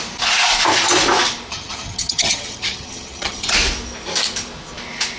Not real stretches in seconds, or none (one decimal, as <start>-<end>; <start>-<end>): 1.5-3.5